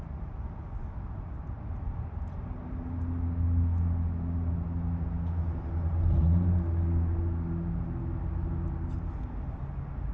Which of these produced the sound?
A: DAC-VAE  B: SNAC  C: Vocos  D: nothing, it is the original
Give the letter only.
D